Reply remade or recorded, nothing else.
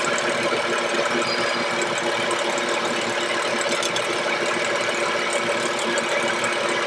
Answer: recorded